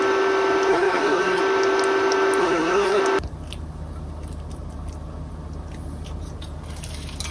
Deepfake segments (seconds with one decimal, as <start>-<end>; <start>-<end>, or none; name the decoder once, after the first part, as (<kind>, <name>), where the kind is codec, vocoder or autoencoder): 0.7-1.4 (codec, SNAC); 2.4-3.0